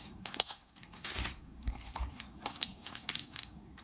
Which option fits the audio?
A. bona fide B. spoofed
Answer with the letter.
B